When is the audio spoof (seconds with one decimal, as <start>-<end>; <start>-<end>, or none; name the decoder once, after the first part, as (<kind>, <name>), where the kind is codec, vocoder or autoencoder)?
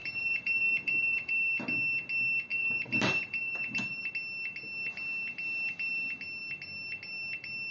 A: 0.0-1.3 (vocoder, BigVGAN v2); 2.5-4.1